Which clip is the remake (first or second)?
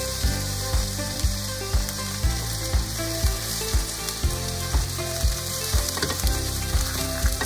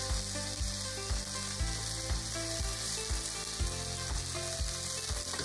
first